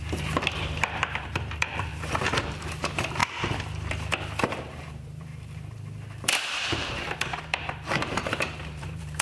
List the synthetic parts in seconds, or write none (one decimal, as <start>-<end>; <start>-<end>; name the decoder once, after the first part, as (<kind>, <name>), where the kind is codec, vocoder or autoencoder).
0.0-3.2 (vocoder, BigVGAN v2); 4.6-9.2

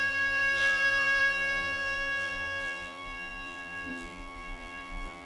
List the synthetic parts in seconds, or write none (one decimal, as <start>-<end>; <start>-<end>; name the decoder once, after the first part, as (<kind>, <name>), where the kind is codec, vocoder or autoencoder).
0.0-5.3 (vocoder, BigVGAN v2)

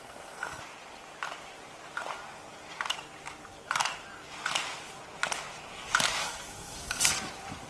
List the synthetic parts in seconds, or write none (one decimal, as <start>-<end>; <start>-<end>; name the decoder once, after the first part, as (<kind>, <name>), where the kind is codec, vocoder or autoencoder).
0.0-0.6 (codec, SNAC); 6.2-7.1